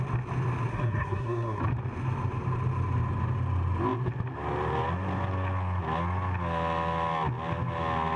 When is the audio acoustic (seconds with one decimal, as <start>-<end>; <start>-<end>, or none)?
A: 0.0-0.7; 1.6-8.2